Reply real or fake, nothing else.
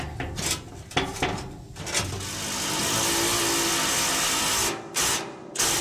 real